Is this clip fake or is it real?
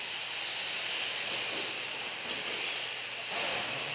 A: real